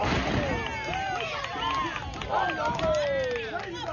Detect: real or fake real